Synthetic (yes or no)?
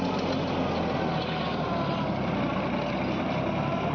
no